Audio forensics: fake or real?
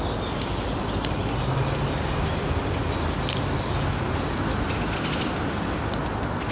real